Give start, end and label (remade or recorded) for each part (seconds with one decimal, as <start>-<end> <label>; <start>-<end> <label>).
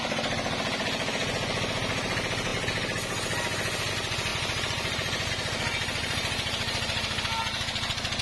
0.0-4.3 recorded; 4.3-5.3 remade; 5.3-6.0 recorded; 6.0-7.2 remade; 7.2-8.2 recorded